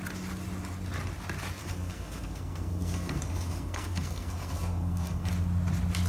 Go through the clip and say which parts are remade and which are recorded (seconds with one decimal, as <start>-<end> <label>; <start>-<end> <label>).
0.0-1.6 recorded; 1.6-5.3 remade; 5.3-6.1 recorded